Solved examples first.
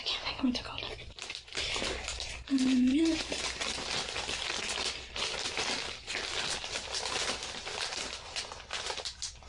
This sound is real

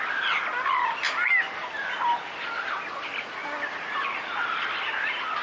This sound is real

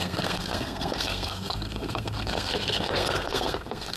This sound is fake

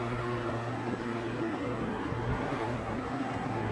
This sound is fake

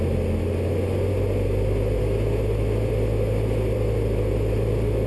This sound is real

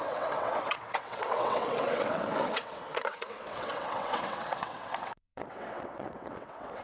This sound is fake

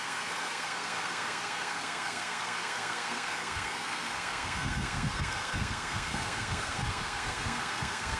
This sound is fake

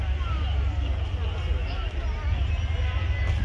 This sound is real